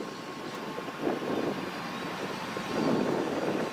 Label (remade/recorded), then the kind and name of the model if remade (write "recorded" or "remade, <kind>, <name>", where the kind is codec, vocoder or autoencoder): recorded